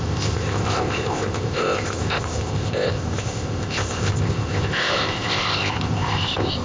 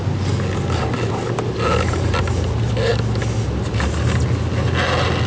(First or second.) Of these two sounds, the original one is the second